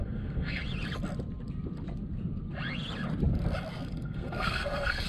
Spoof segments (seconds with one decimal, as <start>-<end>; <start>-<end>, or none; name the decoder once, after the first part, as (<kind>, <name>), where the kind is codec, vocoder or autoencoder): 0.0-0.6 (codec, SNAC); 3.7-5.1